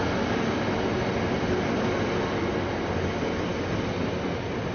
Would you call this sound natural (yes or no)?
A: yes